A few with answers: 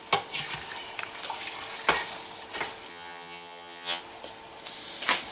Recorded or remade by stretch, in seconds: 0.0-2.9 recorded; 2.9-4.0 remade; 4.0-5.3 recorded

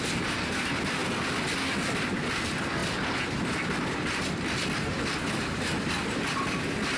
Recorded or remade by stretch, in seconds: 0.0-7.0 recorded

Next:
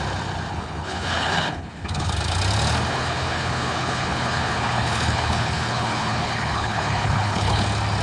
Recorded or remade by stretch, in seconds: 0.0-0.5 recorded; 0.5-2.1 remade; 2.1-2.9 recorded; 2.9-7.6 remade; 7.6-8.0 recorded

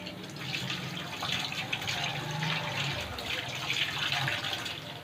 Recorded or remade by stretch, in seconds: 0.0-5.0 recorded

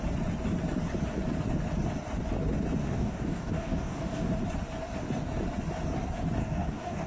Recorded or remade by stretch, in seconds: 0.0-2.8 recorded; 2.8-4.3 remade; 4.3-6.4 recorded; 6.4-7.1 remade

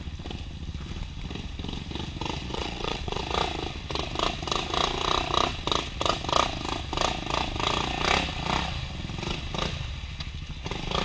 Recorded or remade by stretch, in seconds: 0.0-2.4 recorded; 2.4-3.2 remade; 3.2-11.0 recorded